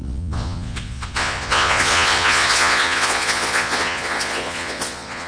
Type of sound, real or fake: fake